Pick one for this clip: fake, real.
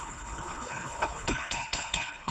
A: fake